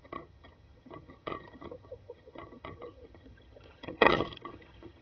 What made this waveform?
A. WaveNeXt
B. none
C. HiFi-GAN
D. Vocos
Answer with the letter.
C